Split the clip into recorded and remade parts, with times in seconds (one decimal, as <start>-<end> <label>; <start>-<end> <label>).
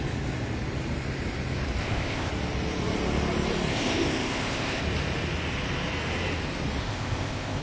0.0-1.8 recorded; 1.8-2.3 remade; 2.3-3.7 recorded; 3.7-4.8 remade; 4.8-6.8 recorded; 6.8-7.6 remade